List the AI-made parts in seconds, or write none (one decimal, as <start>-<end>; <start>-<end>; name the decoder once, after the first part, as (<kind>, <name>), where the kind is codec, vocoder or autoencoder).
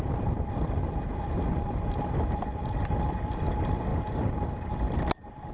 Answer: none